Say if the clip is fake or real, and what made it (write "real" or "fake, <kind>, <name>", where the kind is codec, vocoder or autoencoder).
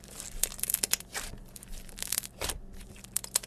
fake, vocoder, BigVGAN v2